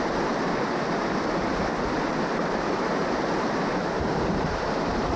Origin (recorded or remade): remade